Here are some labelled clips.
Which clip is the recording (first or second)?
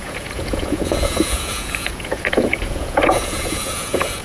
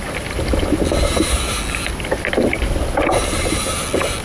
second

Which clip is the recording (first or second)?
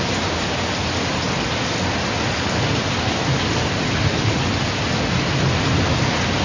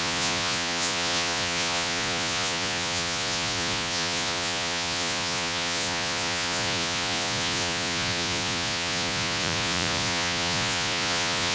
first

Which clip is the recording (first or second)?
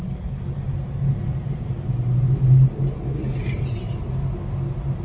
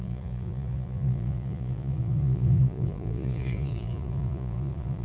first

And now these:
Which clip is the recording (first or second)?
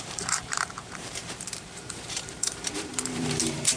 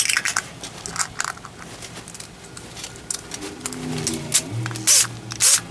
second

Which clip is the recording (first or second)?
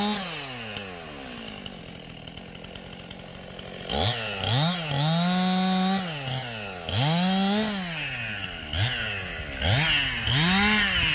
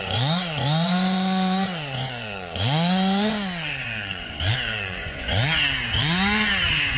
first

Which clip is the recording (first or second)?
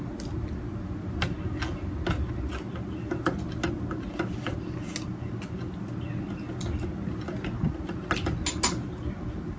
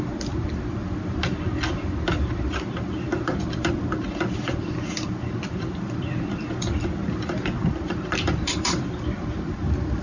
first